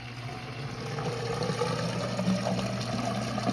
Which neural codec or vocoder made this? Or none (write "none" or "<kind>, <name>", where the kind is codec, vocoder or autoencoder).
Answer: none